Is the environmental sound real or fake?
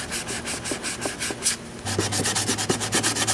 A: real